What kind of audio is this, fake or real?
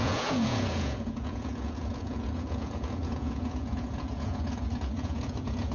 fake